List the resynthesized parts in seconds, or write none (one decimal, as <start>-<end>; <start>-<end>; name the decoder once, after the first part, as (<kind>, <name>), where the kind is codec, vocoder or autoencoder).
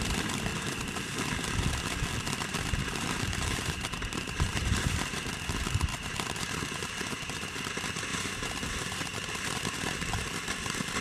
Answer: 2.5-5.3 (vocoder, BigVGAN v2); 5.9-7.0; 8.1-9.3